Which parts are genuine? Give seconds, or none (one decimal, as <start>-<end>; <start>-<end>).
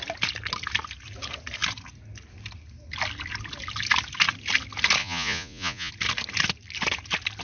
0.0-5.0; 5.9-7.4